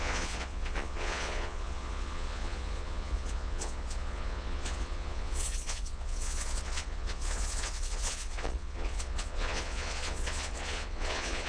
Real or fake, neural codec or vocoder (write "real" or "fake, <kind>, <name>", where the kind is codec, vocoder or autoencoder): fake, vocoder, Vocos